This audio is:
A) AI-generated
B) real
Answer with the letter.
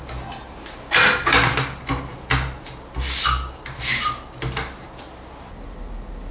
B